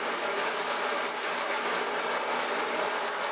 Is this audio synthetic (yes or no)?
no